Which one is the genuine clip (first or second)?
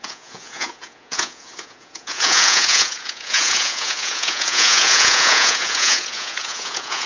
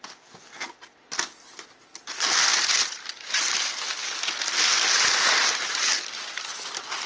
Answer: second